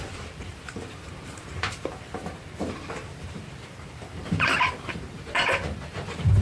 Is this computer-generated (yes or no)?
yes